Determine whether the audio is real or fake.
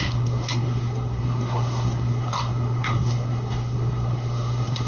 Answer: fake